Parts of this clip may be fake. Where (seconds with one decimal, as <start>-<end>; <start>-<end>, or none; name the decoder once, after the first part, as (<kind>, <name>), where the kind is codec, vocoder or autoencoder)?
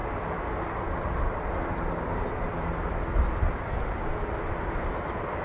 none